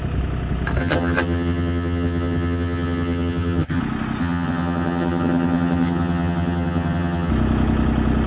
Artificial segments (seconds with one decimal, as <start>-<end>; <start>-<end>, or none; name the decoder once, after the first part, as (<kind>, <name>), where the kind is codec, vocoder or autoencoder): 0.8-3.8 (vocoder, HiFi-GAN); 4.2-7.3

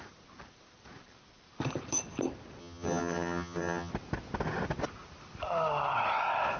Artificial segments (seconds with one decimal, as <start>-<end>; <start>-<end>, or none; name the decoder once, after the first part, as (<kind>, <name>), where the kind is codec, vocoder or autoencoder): 2.6-3.9 (vocoder, HiFi-GAN)

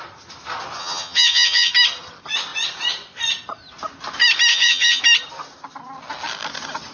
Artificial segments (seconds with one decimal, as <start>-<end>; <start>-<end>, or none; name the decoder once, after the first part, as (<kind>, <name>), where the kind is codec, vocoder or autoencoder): 0.8-1.7 (vocoder, HiFi-GAN); 4.5-5.0

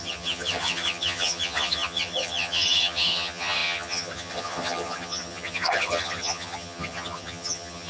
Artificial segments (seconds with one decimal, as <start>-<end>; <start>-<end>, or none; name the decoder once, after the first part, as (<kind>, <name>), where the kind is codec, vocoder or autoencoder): 0.0-7.9 (vocoder, HiFi-GAN)

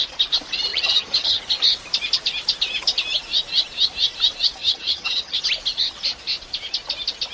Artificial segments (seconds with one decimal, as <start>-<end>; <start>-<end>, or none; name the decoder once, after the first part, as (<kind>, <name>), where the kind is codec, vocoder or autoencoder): 0.7-1.4 (vocoder, HiFi-GAN); 4.6-5.4

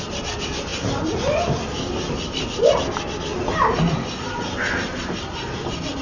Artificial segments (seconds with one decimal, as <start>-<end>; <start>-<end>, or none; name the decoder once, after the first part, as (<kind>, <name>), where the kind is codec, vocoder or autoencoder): none

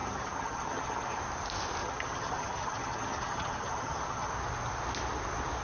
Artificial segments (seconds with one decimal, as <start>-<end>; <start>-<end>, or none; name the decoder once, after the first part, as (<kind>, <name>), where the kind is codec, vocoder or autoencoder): 0.0-1.2 (vocoder, HiFi-GAN); 1.8-4.3